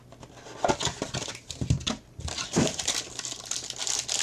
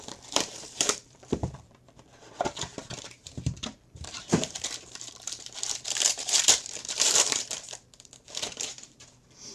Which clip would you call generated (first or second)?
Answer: second